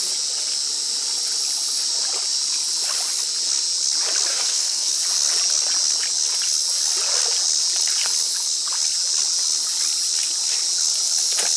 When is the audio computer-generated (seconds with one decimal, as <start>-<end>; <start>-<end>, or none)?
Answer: 4.3-4.9